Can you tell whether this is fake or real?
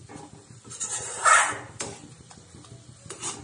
real